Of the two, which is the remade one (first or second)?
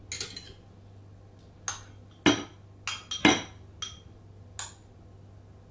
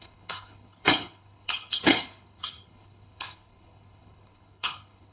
second